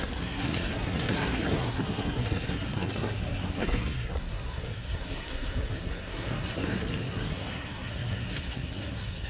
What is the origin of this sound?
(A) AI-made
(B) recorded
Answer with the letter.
A